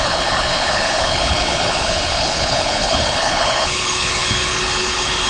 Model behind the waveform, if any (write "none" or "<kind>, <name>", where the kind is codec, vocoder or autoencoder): codec, HILCodec